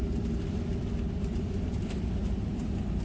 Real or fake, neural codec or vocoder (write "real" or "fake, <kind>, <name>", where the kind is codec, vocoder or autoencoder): fake, vocoder, BigVGAN v2